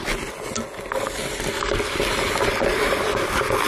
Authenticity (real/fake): real